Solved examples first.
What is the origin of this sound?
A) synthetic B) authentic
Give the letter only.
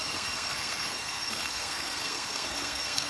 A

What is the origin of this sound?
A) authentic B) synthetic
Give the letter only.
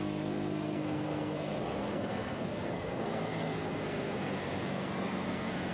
B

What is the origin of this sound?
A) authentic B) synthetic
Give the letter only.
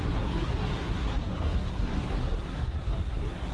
B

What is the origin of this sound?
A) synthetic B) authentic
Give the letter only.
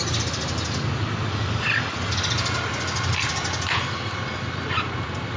B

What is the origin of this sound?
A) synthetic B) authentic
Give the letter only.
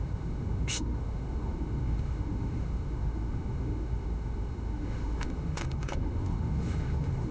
A